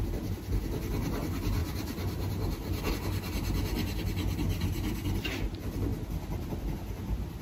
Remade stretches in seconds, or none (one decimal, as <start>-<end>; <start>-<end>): 1.6-2.9